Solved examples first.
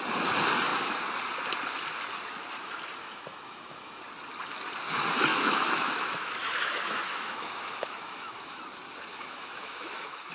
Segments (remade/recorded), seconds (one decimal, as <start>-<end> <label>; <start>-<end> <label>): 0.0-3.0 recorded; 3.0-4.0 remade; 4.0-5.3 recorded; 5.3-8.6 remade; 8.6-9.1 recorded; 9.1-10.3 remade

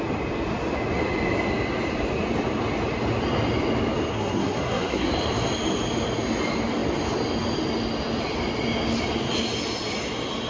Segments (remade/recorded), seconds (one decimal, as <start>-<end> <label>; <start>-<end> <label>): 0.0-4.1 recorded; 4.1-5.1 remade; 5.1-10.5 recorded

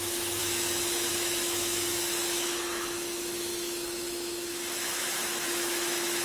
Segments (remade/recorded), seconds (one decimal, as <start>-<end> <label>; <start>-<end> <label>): 0.0-6.2 remade

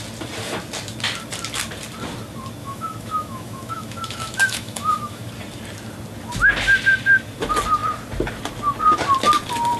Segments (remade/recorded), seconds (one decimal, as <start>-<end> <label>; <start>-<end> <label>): 0.0-2.6 recorded; 2.6-5.3 remade; 5.3-9.8 recorded

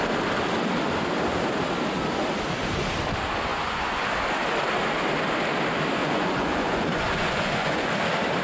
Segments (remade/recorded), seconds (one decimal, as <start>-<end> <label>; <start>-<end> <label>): 0.0-3.5 recorded; 3.5-4.1 remade; 4.1-6.0 recorded; 6.0-7.9 remade; 7.9-8.4 recorded

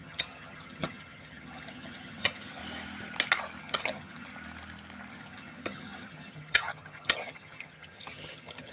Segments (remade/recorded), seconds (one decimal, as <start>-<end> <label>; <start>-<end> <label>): 0.0-2.6 remade; 2.6-3.6 recorded; 3.6-4.3 remade; 4.3-5.1 recorded; 5.1-8.7 remade

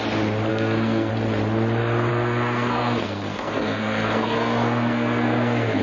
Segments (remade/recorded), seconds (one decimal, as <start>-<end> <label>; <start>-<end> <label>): 0.0-0.5 recorded; 0.5-1.1 remade; 1.1-2.1 recorded; 2.1-5.8 remade

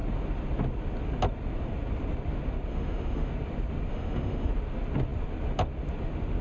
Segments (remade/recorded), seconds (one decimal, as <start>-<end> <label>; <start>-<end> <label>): 0.0-2.7 recorded; 2.7-3.3 remade; 3.3-3.9 recorded; 3.9-4.5 remade; 4.5-6.4 recorded